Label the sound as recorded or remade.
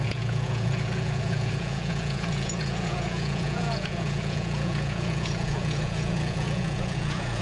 remade